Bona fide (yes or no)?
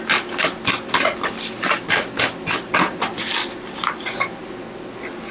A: yes